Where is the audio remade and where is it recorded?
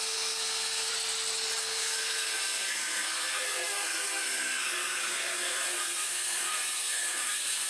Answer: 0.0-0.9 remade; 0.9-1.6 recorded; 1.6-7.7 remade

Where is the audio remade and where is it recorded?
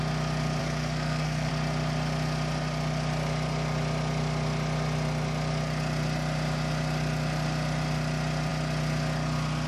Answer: 0.0-0.6 recorded; 0.6-1.5 remade; 1.5-9.7 recorded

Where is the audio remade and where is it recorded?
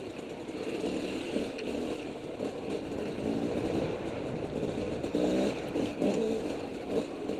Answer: 0.0-5.8 recorded; 5.8-6.4 remade; 6.4-7.4 recorded